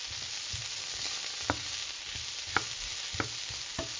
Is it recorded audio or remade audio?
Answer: recorded